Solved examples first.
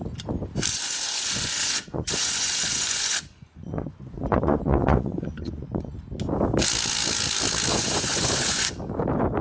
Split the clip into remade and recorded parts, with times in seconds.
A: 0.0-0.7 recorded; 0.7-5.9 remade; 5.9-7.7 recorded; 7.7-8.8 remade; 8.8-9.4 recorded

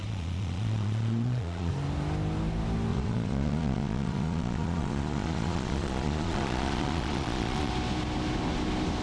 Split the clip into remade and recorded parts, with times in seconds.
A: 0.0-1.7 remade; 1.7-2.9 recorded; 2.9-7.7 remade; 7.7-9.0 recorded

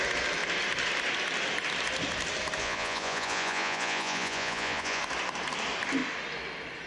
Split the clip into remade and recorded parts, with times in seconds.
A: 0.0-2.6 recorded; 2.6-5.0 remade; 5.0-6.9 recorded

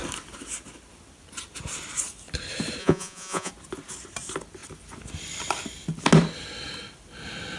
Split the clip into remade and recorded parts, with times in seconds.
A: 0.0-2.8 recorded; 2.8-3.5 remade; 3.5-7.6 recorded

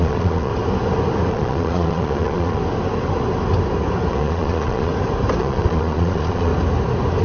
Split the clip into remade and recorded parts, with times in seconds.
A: 0.0-0.5 remade; 0.5-1.3 recorded; 1.3-2.6 remade; 2.6-4.1 recorded; 4.1-4.9 remade; 4.9-5.4 recorded; 5.4-6.5 remade; 6.5-7.2 recorded